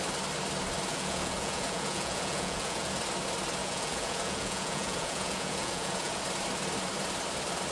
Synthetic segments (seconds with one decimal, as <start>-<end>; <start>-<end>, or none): 0.9-2.9; 3.6-6.2